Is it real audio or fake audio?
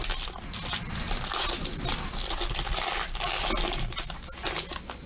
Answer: real